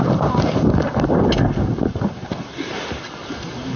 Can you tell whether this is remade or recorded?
recorded